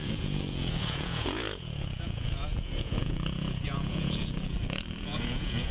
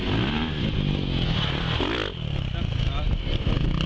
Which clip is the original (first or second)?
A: second